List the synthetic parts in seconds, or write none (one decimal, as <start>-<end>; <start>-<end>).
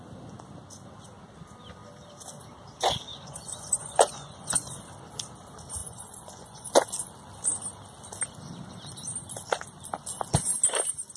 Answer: 3.1-4.8; 5.8-6.7